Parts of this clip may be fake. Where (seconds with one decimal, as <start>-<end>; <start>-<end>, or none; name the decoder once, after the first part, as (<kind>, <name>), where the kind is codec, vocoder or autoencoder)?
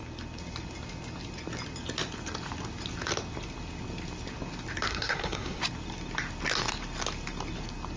4.9-5.6 (codec, SNAC)